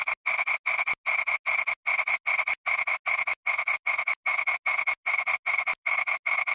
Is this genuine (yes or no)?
yes